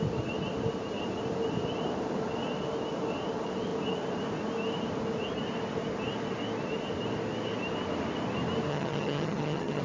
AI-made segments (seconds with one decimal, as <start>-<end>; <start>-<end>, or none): 8.7-9.8